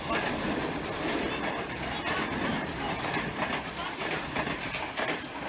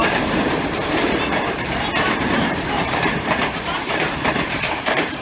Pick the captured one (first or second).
first